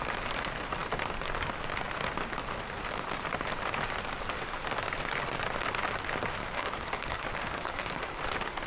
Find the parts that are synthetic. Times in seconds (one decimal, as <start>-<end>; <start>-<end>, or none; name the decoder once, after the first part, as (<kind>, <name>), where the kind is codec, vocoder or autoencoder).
6.4-8.2 (codec, DAC)